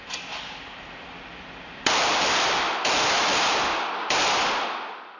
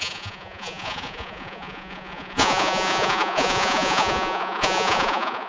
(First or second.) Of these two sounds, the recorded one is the first